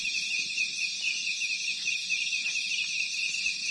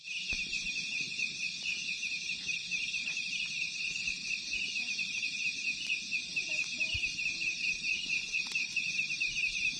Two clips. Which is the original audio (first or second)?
first